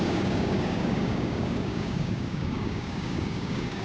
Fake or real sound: fake